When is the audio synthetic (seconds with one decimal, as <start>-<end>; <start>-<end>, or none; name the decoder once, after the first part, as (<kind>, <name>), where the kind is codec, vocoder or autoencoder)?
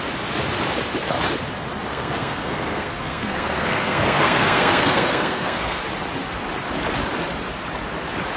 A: 1.9-5.8 (codec, SNAC)